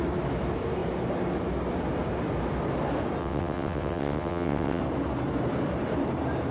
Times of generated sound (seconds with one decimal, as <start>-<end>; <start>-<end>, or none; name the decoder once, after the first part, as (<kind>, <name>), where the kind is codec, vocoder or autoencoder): 3.2-4.8 (vocoder, WaveNeXt)